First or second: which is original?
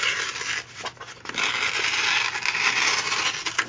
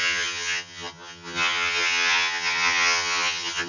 first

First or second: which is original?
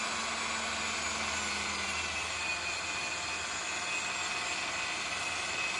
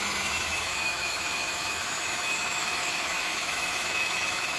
first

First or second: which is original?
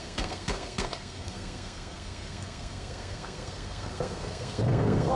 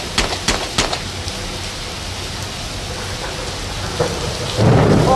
second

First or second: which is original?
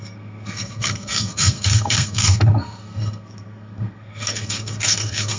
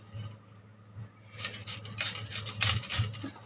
second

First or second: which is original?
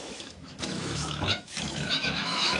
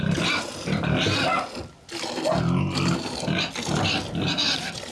second